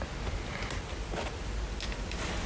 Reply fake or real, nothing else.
real